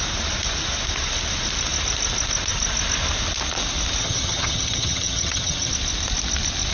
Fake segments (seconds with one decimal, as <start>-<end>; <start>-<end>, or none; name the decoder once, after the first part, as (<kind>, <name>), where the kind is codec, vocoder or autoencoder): 4.0-5.7 (vocoder, HiFi-GAN)